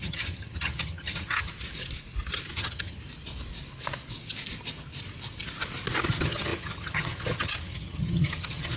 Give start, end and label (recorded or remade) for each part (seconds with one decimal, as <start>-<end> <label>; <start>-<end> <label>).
0.0-1.5 remade; 1.5-2.6 recorded; 2.6-3.0 remade; 3.0-6.1 recorded; 6.1-8.8 remade